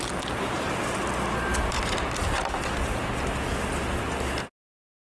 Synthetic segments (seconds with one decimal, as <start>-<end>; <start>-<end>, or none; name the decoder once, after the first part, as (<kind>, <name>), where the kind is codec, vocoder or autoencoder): none